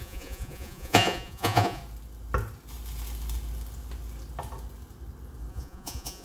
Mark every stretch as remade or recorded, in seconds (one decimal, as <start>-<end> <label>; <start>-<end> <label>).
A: 0.0-1.8 remade; 1.8-5.5 recorded; 5.5-6.2 remade